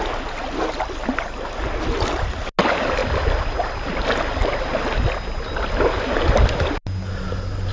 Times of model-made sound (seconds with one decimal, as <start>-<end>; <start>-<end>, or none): none